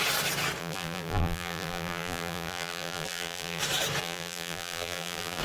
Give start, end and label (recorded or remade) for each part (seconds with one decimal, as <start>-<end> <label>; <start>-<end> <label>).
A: 0.0-0.6 recorded; 0.6-3.6 remade; 3.6-4.0 recorded; 4.0-5.4 remade